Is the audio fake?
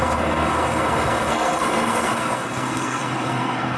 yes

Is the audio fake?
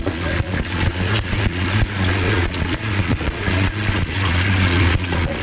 yes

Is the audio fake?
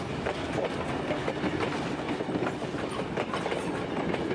no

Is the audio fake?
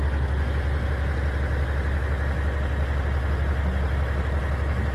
no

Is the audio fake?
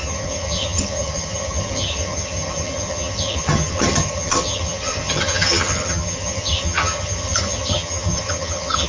yes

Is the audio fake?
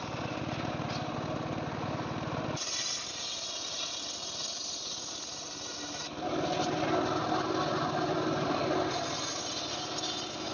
no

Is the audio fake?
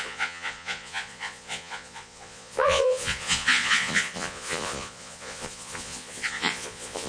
yes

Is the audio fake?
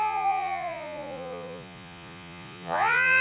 yes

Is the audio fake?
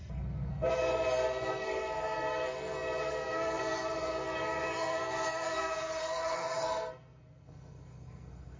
yes